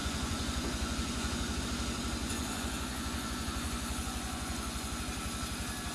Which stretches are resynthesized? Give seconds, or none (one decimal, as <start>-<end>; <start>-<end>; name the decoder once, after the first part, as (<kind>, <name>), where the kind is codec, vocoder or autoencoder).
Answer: 0.0-1.6 (vocoder, Vocos); 2.2-5.0